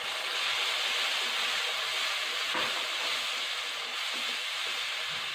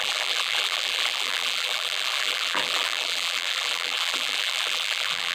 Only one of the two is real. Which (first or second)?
first